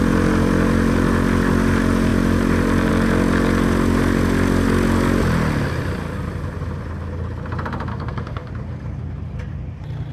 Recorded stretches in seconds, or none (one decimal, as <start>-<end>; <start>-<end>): 0.0-7.9; 8.5-10.1